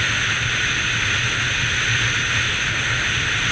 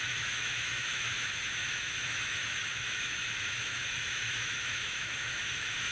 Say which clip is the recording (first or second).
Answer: first